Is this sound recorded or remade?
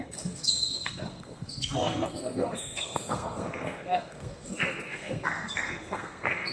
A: remade